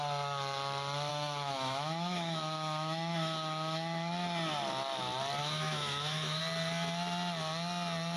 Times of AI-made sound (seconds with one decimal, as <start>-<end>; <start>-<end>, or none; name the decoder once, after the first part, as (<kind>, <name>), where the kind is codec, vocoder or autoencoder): 1.1-4.1 (autoencoder, DAC-VAE); 5.4-6.4